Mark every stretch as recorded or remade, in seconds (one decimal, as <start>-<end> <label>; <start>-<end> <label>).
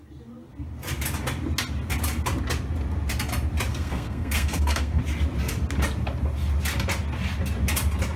0.0-3.7 recorded; 3.7-5.0 remade; 5.0-8.2 recorded